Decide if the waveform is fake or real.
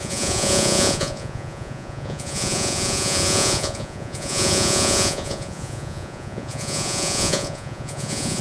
fake